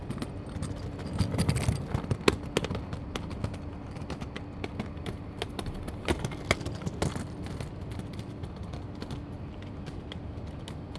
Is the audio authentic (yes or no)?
yes